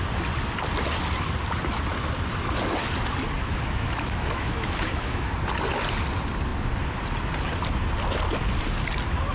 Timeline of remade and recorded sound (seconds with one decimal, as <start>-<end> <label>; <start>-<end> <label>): 0.0-3.4 recorded; 3.4-5.3 remade; 5.3-9.3 recorded